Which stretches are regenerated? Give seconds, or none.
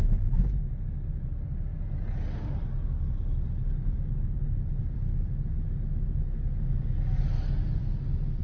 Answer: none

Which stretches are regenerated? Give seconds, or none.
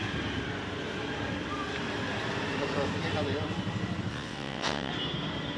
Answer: 4.1-4.9 (vocoder, WaveNeXt)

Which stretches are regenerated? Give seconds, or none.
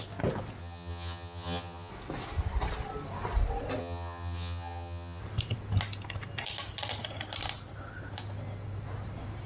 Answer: 0.6-1.9 (vocoder, HiFi-GAN); 3.8-5.2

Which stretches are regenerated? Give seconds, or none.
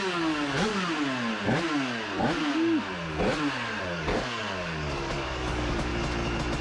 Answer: 0.0-0.7 (codec, DAC); 3.8-5.9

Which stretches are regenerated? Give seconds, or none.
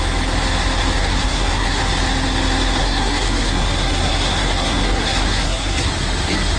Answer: 1.0-1.8 (codec, SNAC); 2.8-5.9